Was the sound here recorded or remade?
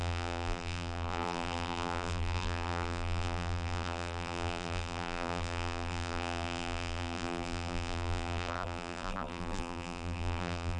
remade